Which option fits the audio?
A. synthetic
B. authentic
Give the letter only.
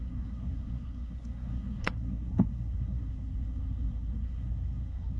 A